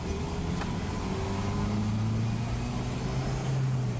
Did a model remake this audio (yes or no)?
no